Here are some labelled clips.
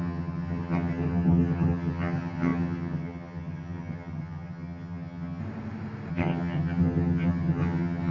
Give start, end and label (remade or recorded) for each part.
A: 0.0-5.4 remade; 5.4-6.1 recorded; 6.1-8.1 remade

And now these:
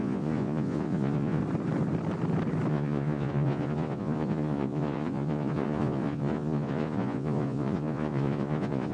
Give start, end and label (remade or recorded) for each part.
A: 0.0-1.4 remade; 1.4-2.7 recorded; 2.7-8.9 remade

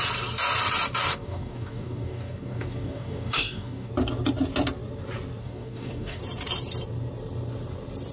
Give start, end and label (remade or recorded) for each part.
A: 0.0-1.1 recorded; 1.1-3.9 remade; 3.9-5.4 recorded; 5.4-6.2 remade; 6.2-8.1 recorded

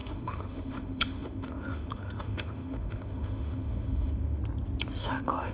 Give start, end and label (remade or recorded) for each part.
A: 0.0-4.4 remade; 4.4-5.0 recorded; 5.0-5.5 remade

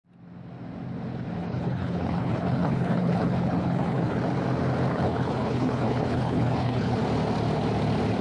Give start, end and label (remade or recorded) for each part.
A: 0.0-1.4 recorded; 1.4-4.2 remade; 4.2-4.9 recorded; 4.9-7.0 remade; 7.0-8.2 recorded

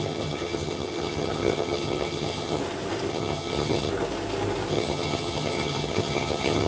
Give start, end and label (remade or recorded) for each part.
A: 0.0-2.6 remade; 2.6-3.1 recorded; 3.1-3.9 remade; 3.9-4.7 recorded; 4.7-6.7 remade

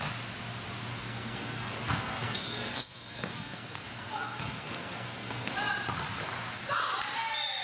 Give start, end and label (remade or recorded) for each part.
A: 0.0-0.9 recorded; 0.9-5.5 remade; 5.5-7.6 recorded